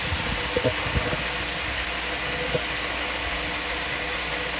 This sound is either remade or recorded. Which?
recorded